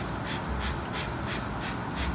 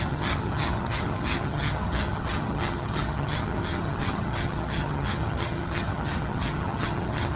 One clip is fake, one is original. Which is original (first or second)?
first